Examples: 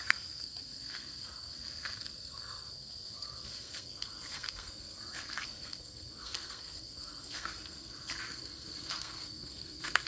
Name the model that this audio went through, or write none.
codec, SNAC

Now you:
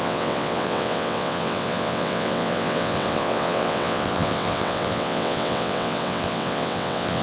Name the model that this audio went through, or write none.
vocoder, WaveNeXt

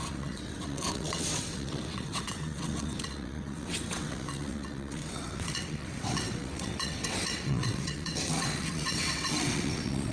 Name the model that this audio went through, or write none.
vocoder, WaveNeXt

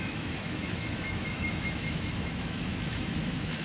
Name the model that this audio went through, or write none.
autoencoder, DAC-VAE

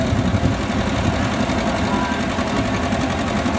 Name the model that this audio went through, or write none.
none